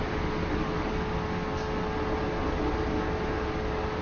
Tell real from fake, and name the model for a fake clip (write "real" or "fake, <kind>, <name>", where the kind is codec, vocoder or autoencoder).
real